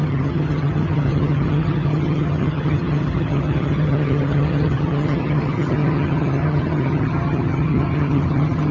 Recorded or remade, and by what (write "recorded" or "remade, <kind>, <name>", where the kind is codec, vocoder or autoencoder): remade, vocoder, HiFi-GAN